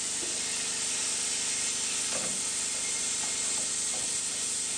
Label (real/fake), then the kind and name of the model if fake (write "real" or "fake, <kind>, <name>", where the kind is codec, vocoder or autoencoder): real